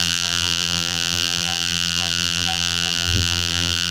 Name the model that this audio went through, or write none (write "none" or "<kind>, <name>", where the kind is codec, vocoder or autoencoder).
vocoder, BigVGAN v2